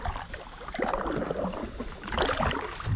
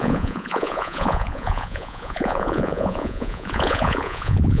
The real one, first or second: first